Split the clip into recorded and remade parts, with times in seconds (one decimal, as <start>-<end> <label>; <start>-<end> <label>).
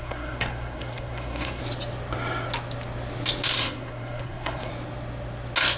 0.0-1.6 remade; 1.6-3.6 recorded; 3.6-4.7 remade; 4.7-5.8 recorded